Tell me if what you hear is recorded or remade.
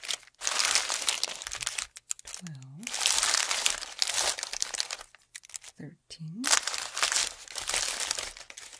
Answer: recorded